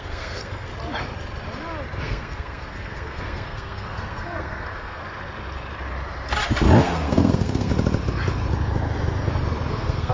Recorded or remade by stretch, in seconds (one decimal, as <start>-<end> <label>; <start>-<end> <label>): 0.0-0.7 remade; 0.7-2.0 recorded; 2.0-5.0 remade; 5.0-6.8 recorded; 6.8-7.7 remade; 7.7-9.7 recorded; 9.7-10.1 remade